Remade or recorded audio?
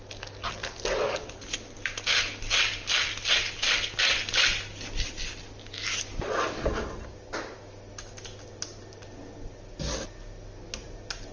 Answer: recorded